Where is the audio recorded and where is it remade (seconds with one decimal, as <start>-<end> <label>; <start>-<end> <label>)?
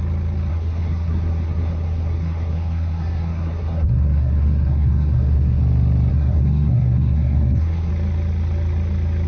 0.0-0.5 recorded; 0.5-5.6 remade; 5.6-6.1 recorded; 6.1-7.9 remade; 7.9-9.3 recorded